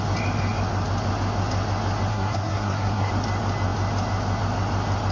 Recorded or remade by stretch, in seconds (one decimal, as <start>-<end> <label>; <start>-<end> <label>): 0.0-2.1 recorded; 2.1-3.1 remade; 3.1-5.1 recorded